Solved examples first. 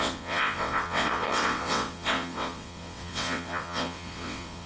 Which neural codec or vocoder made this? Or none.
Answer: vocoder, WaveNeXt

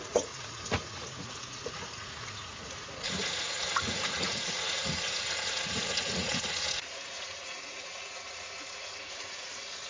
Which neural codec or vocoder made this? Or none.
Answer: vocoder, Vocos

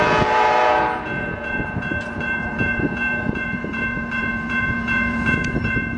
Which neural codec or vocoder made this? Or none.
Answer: vocoder, Vocos